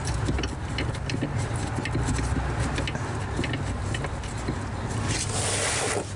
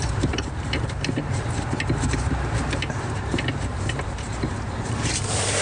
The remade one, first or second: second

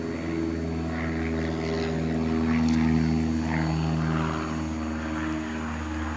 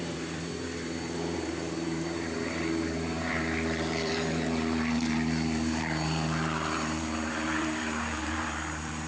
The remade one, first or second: second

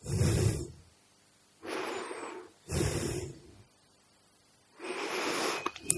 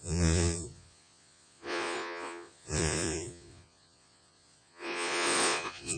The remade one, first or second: second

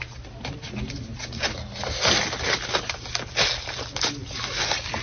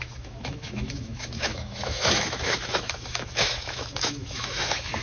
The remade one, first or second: second